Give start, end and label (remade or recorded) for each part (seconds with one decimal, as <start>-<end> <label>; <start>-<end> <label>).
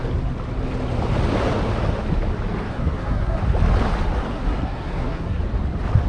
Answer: 0.0-2.7 recorded; 2.7-3.4 remade; 3.4-4.3 recorded; 4.3-5.4 remade; 5.4-6.1 recorded